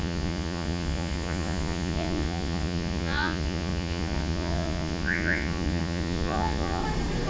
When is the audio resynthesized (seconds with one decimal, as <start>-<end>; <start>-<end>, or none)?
0.0-6.8